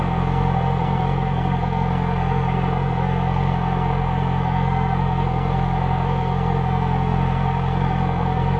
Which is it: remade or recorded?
remade